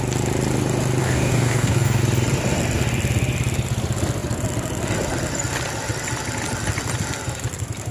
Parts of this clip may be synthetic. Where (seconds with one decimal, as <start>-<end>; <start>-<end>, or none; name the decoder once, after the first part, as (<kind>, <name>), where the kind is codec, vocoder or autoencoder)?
1.0-2.0 (codec, DAC)